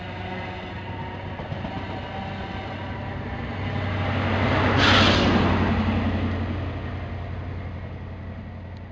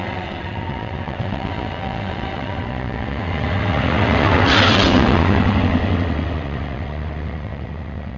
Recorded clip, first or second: first